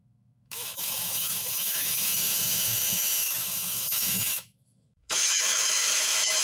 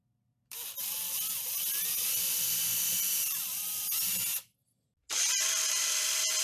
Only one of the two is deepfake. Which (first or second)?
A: first